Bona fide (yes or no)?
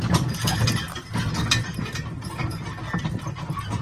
yes